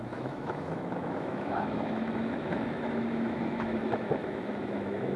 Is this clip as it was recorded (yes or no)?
no